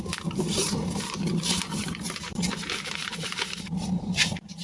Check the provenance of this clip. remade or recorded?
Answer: remade